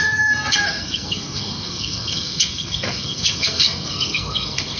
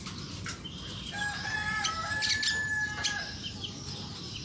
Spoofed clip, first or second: first